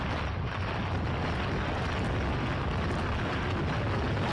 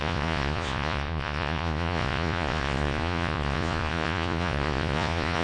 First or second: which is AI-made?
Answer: second